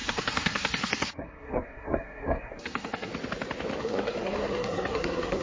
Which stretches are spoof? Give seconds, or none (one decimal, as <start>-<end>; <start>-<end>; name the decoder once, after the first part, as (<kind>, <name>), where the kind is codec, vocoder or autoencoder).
0.0-3.1 (codec, SNAC); 3.8-5.4

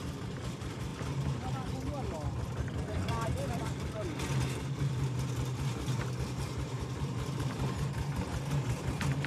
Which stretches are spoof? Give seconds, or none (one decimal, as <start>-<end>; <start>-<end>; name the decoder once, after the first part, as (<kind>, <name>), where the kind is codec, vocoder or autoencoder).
none

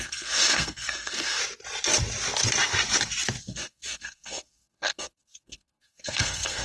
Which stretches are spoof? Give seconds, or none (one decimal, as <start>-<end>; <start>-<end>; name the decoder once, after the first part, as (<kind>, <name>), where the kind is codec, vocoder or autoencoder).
0.0-1.4 (codec, SNAC); 3.4-6.6

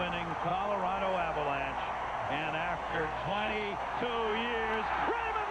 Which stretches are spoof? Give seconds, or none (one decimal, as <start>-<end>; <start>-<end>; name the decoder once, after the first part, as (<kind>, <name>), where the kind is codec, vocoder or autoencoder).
2.9-3.5 (codec, SNAC)